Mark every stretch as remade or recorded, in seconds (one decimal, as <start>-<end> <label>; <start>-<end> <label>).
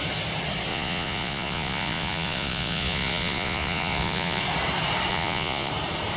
0.0-0.7 recorded; 0.7-4.4 remade; 4.4-5.1 recorded; 5.1-5.7 remade; 5.7-6.2 recorded